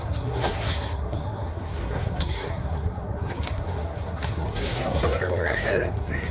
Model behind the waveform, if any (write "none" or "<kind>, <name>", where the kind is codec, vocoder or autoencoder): codec, SNAC